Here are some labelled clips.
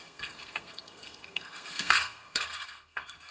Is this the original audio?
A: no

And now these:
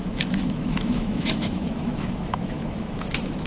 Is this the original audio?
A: no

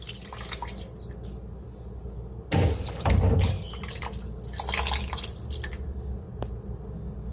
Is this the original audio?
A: yes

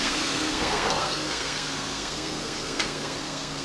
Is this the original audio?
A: no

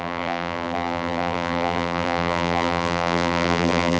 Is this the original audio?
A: no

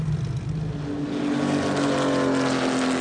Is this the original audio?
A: yes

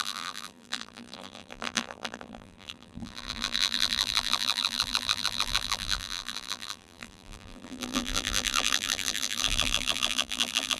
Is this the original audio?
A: no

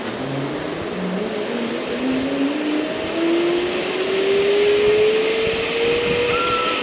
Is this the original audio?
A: yes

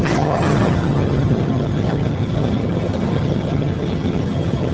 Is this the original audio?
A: no